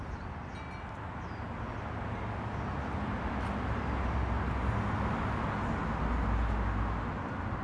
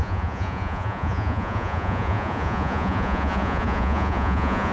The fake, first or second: second